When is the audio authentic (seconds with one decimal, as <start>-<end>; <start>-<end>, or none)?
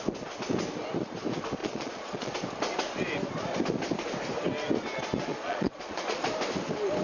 0.0-1.6; 2.3-5.3; 6.2-7.0